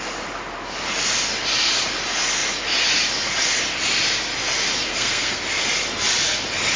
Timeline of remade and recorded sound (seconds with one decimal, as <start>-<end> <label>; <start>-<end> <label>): 0.0-4.9 recorded; 4.9-5.4 remade; 5.4-6.8 recorded